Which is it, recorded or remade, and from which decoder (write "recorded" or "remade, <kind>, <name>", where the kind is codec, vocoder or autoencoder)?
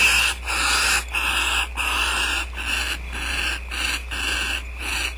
recorded